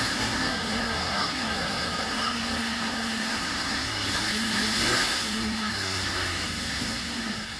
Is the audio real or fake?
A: fake